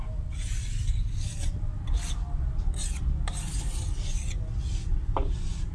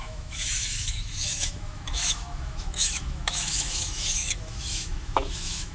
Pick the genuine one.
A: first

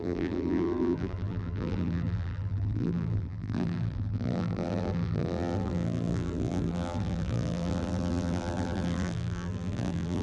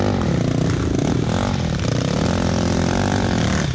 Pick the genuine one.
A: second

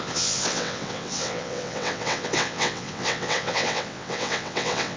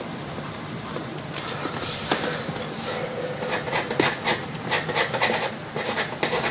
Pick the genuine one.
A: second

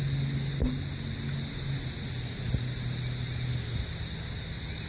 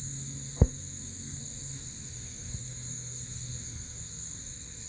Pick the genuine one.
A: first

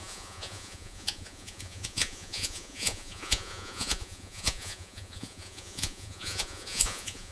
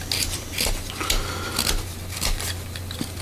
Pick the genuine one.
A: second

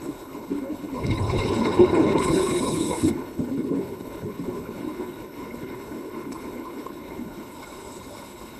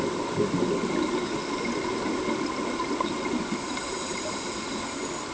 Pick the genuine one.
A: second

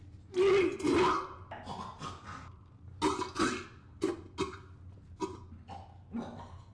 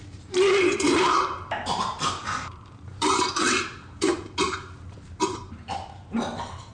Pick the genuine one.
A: first